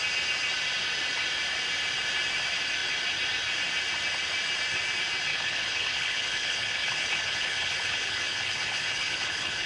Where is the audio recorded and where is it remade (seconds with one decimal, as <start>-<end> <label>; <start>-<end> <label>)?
0.0-5.3 recorded; 5.3-9.7 remade